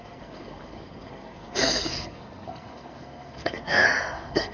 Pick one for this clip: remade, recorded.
remade